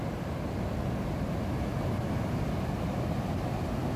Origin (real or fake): real